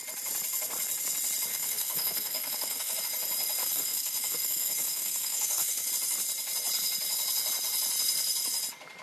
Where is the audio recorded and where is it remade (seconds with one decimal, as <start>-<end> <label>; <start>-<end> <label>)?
0.0-1.5 recorded; 1.5-3.0 remade; 3.0-3.6 recorded; 3.6-5.9 remade; 5.9-9.0 recorded